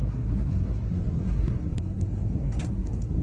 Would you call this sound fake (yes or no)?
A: yes